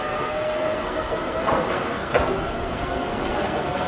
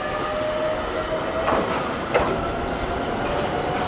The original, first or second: second